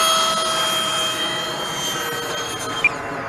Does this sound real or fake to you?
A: real